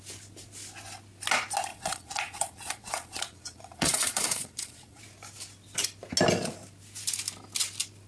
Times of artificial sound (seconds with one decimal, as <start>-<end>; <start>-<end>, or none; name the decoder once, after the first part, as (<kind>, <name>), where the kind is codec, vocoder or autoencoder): 1.7-5.0 (vocoder, Vocos)

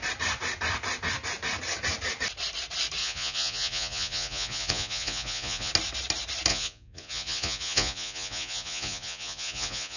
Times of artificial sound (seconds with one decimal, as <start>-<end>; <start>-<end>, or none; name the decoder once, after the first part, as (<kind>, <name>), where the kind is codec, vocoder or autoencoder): 3.0-5.7 (vocoder, Vocos); 6.5-10.0

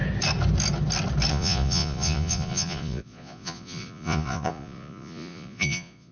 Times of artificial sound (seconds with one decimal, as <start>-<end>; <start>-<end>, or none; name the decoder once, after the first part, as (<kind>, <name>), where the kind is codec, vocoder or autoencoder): 1.3-6.1 (vocoder, Vocos)

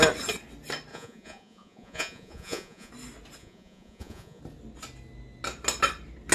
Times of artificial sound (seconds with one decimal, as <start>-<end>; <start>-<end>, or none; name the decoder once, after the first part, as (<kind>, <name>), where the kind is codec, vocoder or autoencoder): 0.9-2.9 (vocoder, Vocos); 3.4-4.4